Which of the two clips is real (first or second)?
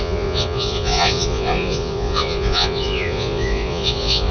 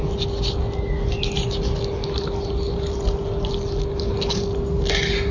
second